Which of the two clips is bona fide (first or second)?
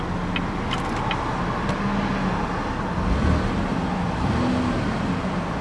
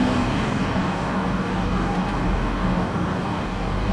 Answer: first